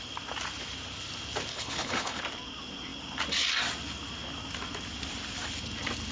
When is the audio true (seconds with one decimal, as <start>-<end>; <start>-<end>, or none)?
0.0-1.5; 2.2-6.1